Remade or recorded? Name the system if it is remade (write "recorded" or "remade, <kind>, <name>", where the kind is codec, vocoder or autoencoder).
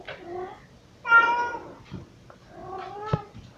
recorded